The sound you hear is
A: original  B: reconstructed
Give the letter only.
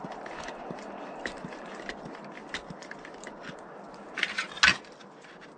A